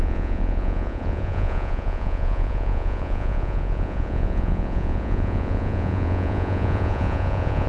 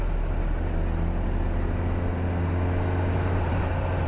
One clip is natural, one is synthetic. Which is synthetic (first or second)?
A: first